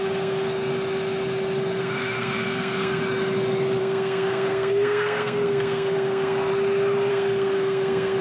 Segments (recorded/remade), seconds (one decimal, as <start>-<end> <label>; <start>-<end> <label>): 0.0-0.7 remade; 0.7-1.8 recorded; 1.8-3.0 remade; 3.0-3.8 recorded; 3.8-6.5 remade; 6.5-7.1 recorded; 7.1-8.2 remade